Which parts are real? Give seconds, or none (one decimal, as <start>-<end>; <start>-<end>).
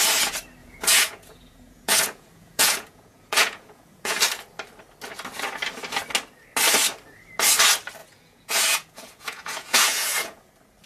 0.0-0.6; 4.2-8.0; 10.5-10.9